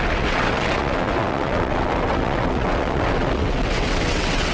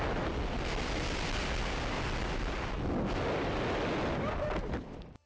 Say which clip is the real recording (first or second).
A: second